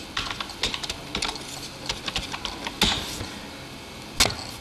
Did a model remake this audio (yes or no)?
no